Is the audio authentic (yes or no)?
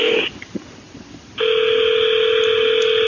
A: yes